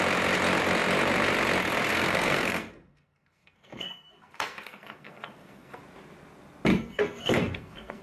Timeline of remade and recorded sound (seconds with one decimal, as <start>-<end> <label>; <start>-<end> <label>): 0.0-1.9 recorded; 1.9-5.8 remade; 5.8-6.7 recorded; 6.7-8.0 remade